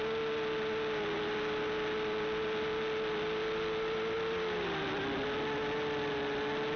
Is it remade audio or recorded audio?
recorded